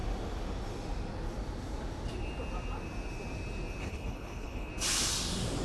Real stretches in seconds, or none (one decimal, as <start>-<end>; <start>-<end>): 0.0-3.8; 4.7-5.6